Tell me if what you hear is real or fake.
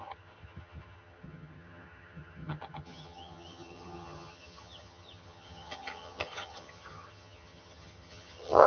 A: fake